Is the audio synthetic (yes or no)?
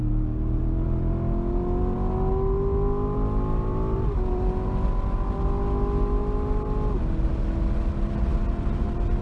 no